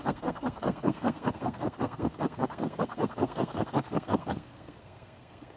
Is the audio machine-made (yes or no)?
yes